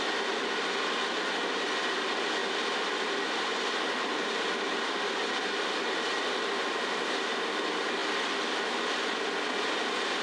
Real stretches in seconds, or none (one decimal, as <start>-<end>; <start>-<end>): 0.0-10.2